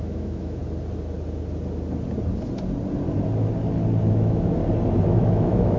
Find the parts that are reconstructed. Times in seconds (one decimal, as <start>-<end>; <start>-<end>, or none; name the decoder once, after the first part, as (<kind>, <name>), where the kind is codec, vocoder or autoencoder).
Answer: 0.0-0.6 (autoencoder, DAC-VAE); 4.1-4.6; 5.1-5.8